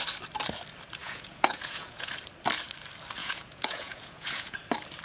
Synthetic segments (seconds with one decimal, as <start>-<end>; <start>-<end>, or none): 1.0-2.1; 3.2-4.6